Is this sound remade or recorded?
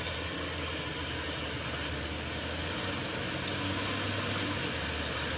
recorded